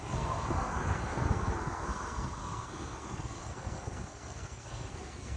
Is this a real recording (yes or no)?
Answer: no